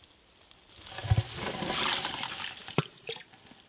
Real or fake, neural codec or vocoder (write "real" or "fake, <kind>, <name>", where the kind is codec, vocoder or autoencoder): real